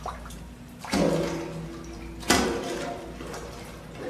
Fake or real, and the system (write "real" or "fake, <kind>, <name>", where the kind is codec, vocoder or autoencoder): fake, vocoder, BigVGAN v2